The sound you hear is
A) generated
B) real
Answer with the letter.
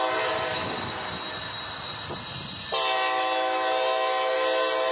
B